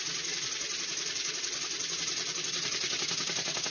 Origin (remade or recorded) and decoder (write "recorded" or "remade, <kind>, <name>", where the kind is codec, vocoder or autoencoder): recorded